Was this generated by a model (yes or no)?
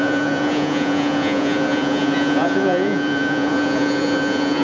yes